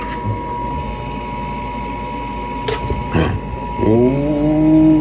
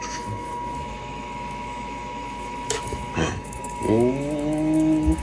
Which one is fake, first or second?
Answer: second